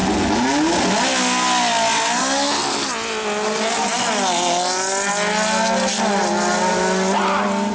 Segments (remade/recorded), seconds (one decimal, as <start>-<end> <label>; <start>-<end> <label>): 0.0-7.7 recorded